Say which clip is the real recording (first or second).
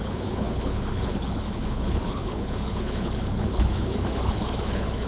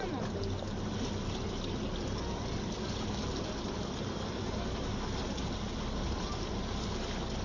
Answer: second